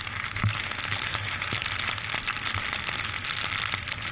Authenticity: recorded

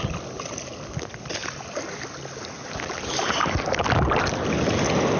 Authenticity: recorded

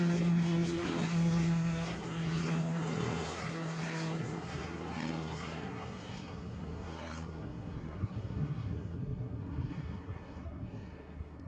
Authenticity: remade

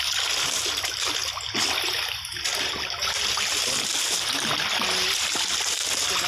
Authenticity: recorded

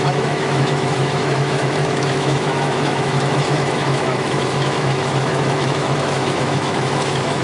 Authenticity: remade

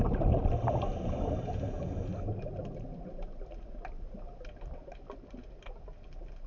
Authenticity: recorded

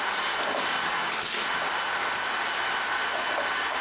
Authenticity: recorded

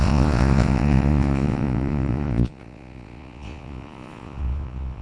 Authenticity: remade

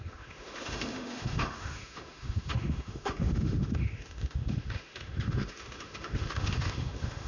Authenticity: remade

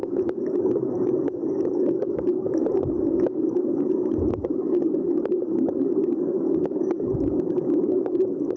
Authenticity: remade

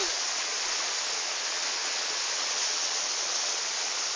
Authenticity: remade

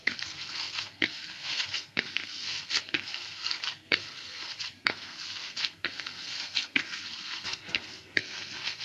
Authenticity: remade